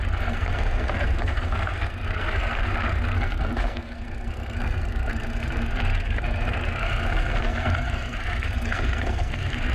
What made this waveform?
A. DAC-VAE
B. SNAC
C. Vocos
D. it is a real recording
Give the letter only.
B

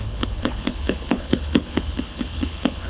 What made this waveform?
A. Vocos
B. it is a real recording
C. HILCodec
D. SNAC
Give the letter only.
C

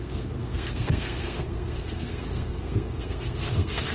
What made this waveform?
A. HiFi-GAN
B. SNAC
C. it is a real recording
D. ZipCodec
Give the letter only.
B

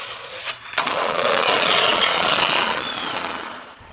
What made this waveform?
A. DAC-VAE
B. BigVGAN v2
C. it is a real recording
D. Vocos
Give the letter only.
D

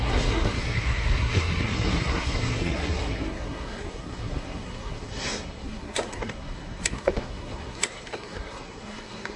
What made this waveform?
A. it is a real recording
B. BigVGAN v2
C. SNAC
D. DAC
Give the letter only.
C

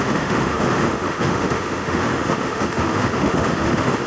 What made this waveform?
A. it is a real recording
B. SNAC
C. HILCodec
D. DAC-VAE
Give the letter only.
D